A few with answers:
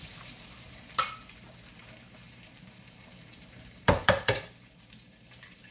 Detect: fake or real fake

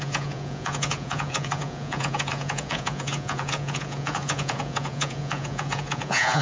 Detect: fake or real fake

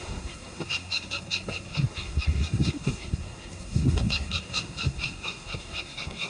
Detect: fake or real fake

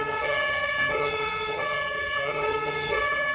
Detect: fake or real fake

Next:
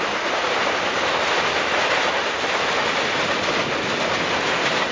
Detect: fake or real real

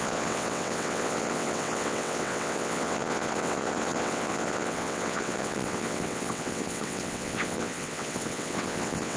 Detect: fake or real fake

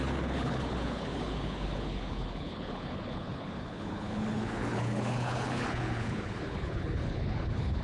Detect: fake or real fake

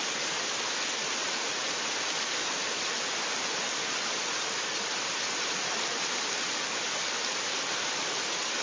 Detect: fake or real real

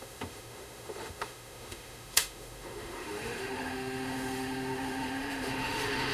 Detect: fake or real fake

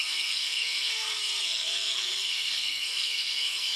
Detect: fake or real fake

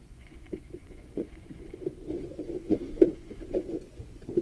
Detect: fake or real fake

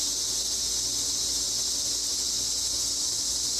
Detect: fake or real real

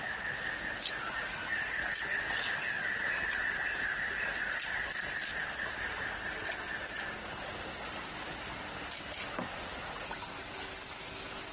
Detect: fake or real real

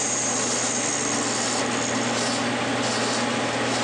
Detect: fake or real real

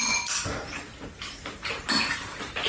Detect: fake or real real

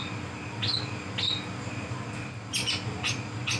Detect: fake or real real